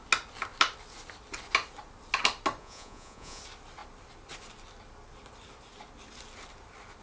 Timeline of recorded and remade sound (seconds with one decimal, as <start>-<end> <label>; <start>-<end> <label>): 0.0-2.6 recorded; 2.6-3.4 remade; 3.4-7.0 recorded